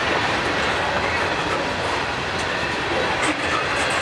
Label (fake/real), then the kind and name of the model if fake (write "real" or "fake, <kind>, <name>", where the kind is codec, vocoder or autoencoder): real